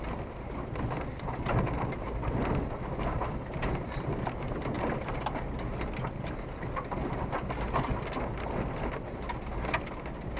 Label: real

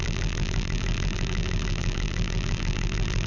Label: fake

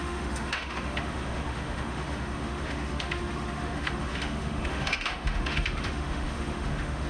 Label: fake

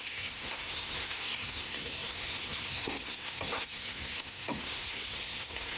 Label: fake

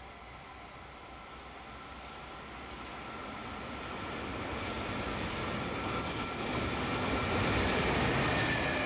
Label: real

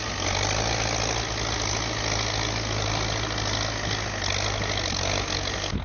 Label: real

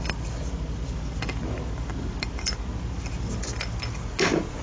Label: real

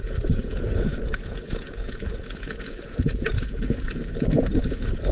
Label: fake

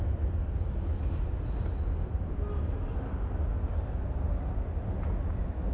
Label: real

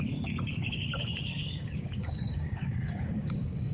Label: fake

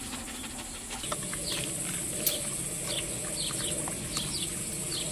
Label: real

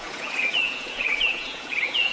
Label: fake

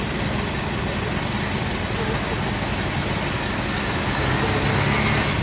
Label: real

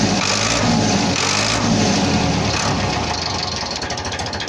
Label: real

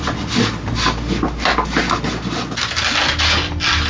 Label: real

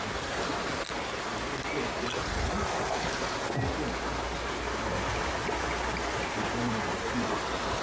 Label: real